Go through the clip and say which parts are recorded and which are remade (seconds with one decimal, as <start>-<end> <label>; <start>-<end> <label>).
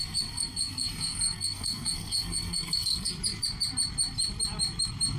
0.0-3.1 remade; 3.1-5.2 recorded